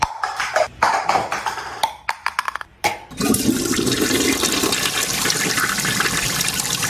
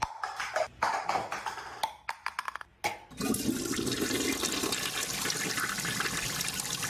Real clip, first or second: second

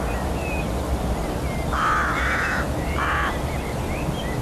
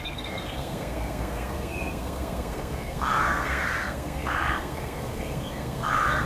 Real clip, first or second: first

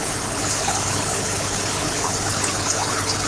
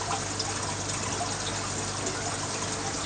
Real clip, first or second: second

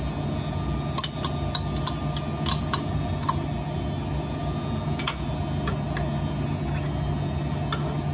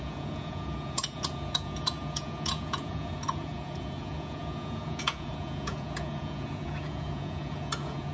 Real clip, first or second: first